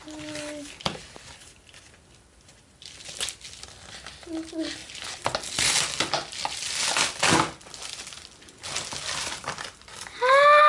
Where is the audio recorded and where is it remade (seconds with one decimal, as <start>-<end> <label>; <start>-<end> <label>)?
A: 0.0-10.7 recorded